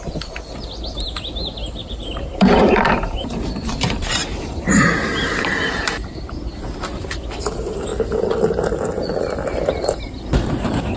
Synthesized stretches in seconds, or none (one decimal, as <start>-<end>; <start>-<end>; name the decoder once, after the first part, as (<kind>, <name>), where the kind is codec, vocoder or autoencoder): 1.8-6.2 (vocoder, BigVGAN v2)